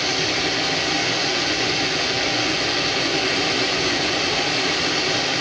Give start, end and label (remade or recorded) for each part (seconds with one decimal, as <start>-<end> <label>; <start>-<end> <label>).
0.0-1.0 recorded; 1.0-4.2 remade; 4.2-5.4 recorded